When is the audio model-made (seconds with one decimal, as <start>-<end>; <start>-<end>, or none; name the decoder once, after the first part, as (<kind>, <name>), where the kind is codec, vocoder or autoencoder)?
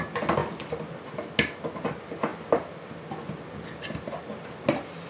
none